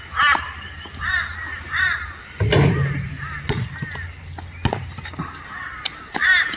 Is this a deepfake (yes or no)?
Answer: no